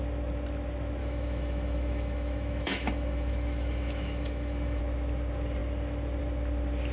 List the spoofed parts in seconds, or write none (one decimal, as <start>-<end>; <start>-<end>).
1.0-4.8